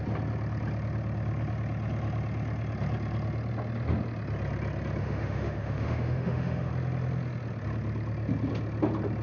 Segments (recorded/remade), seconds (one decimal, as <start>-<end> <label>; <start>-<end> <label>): 0.0-5.0 recorded; 5.0-6.7 remade; 6.7-9.2 recorded